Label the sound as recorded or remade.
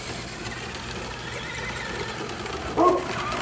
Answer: recorded